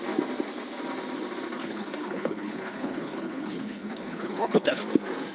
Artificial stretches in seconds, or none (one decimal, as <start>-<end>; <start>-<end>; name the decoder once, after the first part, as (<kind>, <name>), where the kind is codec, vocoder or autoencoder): 1.6-4.8 (codec, HILCodec)